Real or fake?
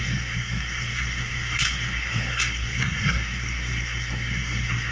fake